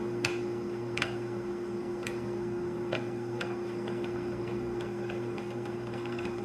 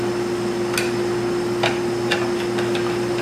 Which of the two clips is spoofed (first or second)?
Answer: first